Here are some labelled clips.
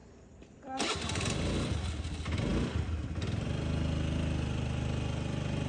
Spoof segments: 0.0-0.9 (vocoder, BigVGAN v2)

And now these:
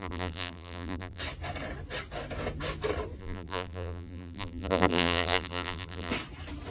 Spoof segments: 0.0-1.2 (vocoder, BigVGAN v2); 3.2-6.1

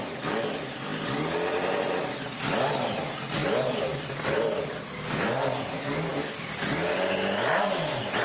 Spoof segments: 3.4-4.6 (vocoder, BigVGAN v2); 6.1-6.9

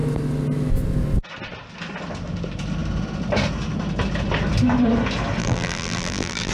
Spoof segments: 5.4-6.5 (vocoder, BigVGAN v2)